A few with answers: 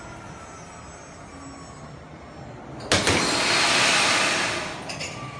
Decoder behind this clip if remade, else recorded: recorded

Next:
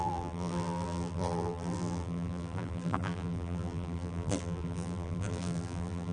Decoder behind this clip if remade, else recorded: remade, vocoder, BigVGAN v2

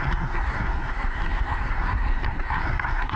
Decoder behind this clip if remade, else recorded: remade, codec, SNAC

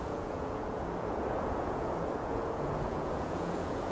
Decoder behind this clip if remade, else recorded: remade, vocoder, Vocos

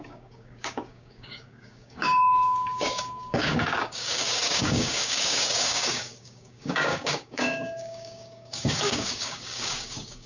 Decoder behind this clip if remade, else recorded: remade, codec, DAC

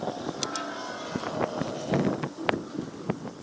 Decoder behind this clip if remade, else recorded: recorded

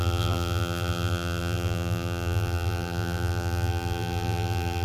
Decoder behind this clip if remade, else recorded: remade, vocoder, BigVGAN v2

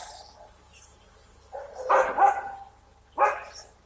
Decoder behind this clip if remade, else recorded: recorded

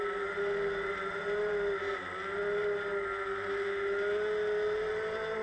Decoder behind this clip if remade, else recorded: recorded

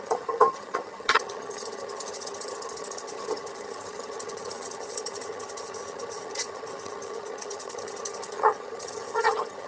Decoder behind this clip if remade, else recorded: remade, vocoder, HiFi-GAN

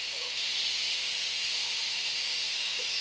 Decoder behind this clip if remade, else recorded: remade, autoencoder, DAC-VAE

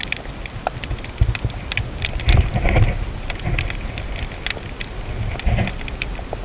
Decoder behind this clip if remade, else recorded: recorded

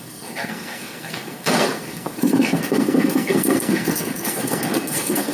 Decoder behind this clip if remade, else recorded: remade, codec, SNAC